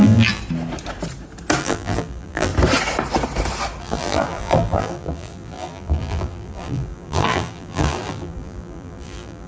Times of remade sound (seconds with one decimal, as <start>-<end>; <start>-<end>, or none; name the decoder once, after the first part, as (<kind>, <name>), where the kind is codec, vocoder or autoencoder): 0.0-0.4 (vocoder, BigVGAN v2); 1.6-2.5; 3.8-9.5